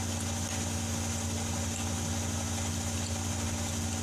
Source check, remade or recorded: recorded